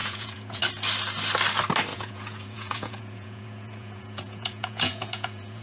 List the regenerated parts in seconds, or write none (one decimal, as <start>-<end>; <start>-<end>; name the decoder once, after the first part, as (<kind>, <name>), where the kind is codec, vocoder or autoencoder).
0.0-0.6 (vocoder, Vocos); 1.9-5.6